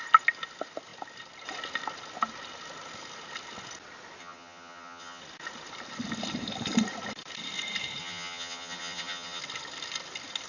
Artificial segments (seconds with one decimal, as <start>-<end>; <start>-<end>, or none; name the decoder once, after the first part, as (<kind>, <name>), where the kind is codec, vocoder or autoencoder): 4.2-5.2 (vocoder, HiFi-GAN); 8.0-9.4